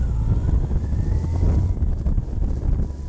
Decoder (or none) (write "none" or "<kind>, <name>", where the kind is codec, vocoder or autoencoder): none